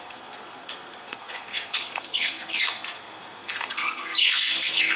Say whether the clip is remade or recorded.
remade